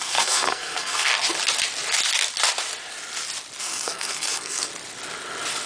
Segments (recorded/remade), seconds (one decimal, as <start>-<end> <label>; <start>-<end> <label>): 0.0-1.1 remade; 1.1-3.6 recorded; 3.6-4.7 remade; 4.7-5.7 recorded